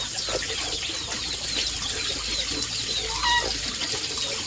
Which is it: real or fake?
real